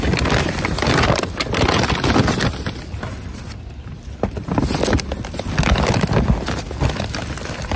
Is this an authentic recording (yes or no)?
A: yes